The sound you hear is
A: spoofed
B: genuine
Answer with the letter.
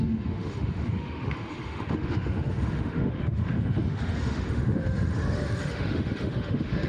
A